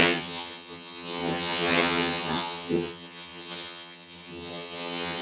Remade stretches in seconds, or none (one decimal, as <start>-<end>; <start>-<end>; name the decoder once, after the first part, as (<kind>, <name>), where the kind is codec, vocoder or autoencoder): 0.0-5.2 (vocoder, HiFi-GAN)